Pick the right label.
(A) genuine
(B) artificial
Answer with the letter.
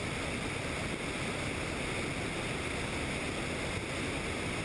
A